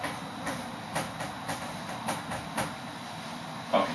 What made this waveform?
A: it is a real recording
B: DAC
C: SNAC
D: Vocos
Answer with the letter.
A